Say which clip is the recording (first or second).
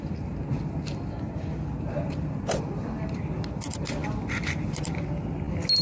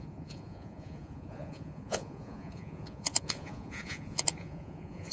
first